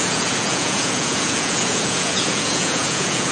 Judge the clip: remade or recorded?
remade